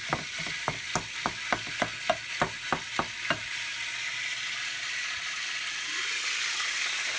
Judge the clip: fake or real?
real